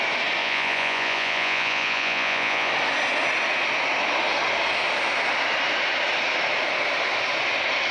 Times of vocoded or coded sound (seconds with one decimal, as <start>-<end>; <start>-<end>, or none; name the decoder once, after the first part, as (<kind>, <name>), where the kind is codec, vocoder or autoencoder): 0.4-2.7 (vocoder, Vocos)